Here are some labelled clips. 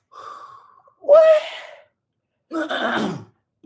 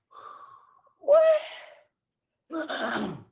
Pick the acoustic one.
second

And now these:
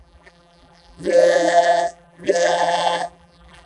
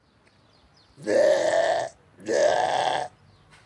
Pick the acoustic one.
second